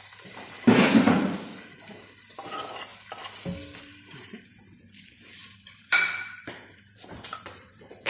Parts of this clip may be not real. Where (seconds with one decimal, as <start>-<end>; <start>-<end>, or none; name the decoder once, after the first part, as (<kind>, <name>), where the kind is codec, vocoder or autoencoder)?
0.0-2.9 (vocoder, BigVGAN v2); 3.8-8.1